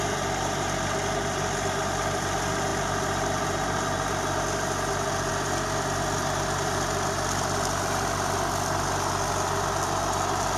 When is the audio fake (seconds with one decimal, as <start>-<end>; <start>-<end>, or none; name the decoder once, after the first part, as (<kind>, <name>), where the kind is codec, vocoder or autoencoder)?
none

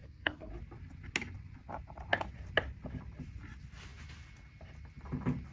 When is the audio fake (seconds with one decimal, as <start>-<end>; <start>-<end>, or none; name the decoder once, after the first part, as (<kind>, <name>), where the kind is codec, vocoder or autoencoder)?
0.0-0.5 (codec, SNAC)